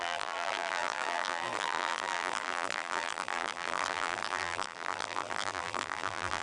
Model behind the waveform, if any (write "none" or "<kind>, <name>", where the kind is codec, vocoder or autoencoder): vocoder, BigVGAN v2